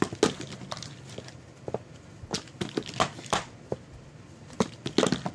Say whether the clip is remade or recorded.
recorded